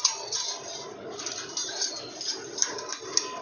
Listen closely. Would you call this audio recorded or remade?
recorded